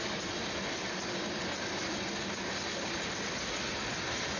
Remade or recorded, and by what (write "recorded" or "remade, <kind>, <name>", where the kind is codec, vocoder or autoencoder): recorded